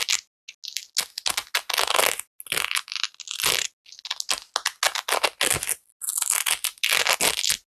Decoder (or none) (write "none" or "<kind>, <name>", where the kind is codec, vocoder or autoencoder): none